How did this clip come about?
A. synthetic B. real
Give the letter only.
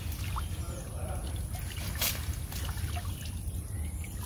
B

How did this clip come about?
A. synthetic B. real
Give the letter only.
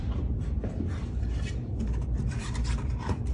A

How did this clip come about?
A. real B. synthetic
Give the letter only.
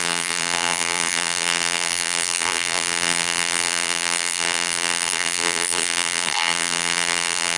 B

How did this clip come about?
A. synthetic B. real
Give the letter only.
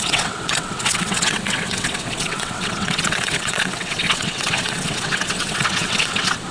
A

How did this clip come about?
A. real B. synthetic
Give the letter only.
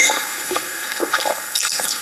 B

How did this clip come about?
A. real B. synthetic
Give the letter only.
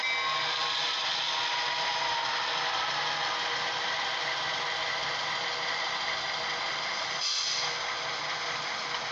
A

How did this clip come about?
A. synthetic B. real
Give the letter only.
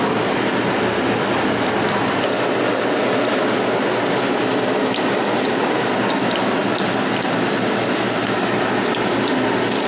B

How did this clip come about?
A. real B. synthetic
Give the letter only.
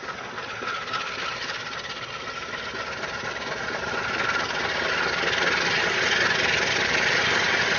A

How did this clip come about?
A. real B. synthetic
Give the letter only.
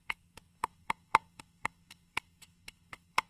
B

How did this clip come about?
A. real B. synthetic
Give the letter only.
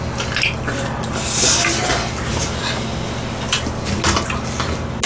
A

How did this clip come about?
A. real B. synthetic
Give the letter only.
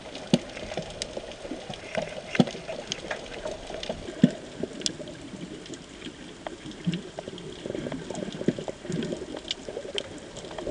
A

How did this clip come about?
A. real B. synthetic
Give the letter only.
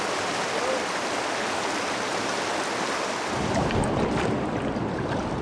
A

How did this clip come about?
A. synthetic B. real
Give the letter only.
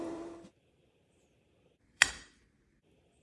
A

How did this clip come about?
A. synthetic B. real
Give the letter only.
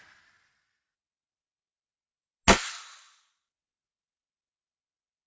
B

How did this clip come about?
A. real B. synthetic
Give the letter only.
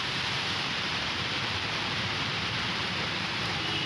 B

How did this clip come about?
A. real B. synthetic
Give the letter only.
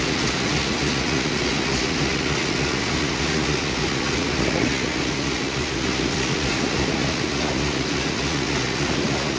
B